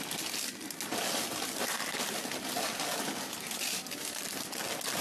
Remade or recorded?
recorded